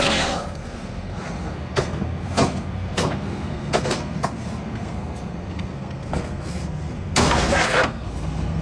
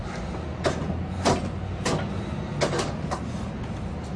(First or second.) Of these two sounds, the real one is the second